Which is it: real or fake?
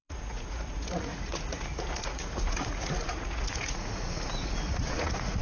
fake